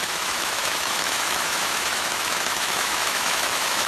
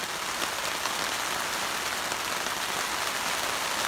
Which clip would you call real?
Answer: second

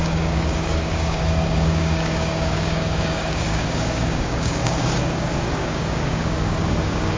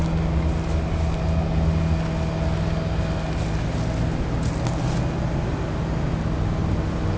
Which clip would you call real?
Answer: second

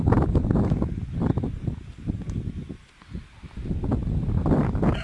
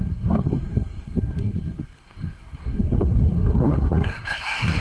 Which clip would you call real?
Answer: first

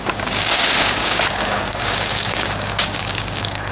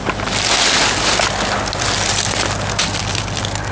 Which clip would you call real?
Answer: second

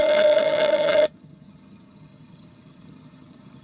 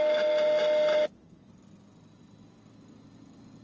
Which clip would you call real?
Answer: second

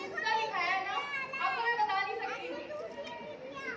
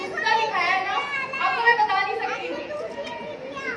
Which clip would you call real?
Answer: first